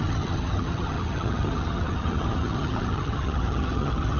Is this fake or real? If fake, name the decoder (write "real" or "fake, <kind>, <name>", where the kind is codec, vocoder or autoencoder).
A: fake, vocoder, HiFi-GAN